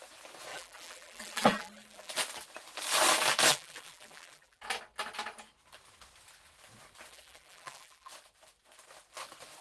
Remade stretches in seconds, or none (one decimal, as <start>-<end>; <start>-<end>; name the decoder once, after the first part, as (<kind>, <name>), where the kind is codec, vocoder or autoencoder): 0.5-2.1 (vocoder, BigVGAN v2); 3.5-4.6; 7.1-8.1